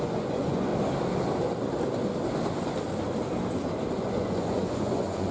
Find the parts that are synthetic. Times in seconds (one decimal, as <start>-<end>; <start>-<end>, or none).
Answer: 0.0-0.7; 3.9-5.3

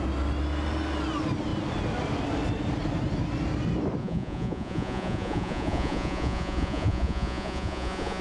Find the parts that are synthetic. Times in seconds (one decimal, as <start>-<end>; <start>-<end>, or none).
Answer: 4.0-8.2

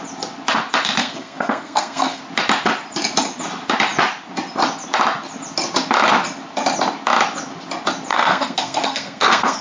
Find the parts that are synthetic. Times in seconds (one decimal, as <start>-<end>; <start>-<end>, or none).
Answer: 1.0-2.2; 8.1-9.6

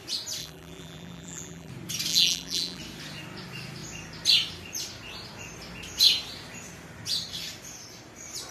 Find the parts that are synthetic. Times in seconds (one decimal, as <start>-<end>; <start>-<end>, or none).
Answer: 0.4-1.7; 2.1-2.8

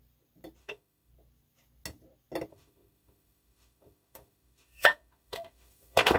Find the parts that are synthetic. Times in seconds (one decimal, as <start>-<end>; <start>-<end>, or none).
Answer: 0.6-1.1; 2.5-6.2

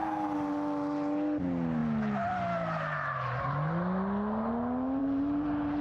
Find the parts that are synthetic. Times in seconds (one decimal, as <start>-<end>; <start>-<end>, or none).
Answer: 5.0-5.8